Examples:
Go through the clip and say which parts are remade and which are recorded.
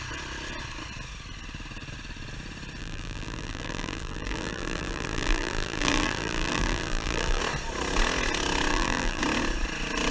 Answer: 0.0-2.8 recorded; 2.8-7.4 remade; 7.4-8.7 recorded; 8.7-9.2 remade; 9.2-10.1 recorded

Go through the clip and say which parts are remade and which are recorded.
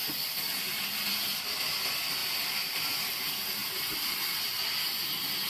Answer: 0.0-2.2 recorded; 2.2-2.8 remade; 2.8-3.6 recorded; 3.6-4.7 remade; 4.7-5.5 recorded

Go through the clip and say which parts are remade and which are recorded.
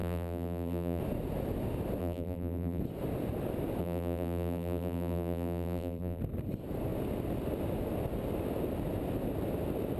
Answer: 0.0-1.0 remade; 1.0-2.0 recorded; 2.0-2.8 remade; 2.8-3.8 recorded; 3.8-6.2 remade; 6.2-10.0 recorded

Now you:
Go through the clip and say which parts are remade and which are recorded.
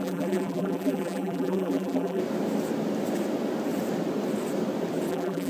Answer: 0.0-2.2 remade; 2.2-5.1 recorded; 5.1-5.5 remade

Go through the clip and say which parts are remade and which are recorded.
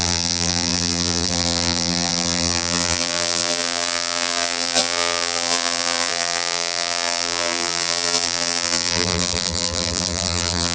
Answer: 0.0-10.7 remade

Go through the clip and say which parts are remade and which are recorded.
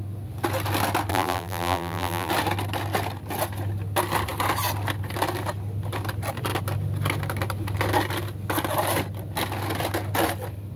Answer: 0.0-1.1 recorded; 1.1-2.3 remade; 2.3-10.8 recorded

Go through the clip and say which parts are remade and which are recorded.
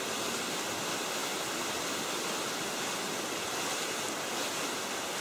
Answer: 0.0-5.2 recorded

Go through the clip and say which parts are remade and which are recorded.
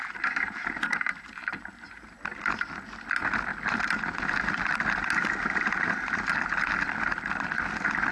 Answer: 0.0-1.4 recorded; 1.4-2.4 remade; 2.4-8.1 recorded